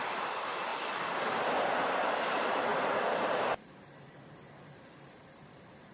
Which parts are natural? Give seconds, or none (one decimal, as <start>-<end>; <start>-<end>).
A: none

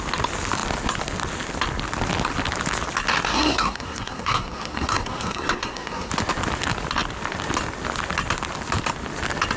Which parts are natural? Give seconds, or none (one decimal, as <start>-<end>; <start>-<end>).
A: 0.0-3.3; 6.1-9.6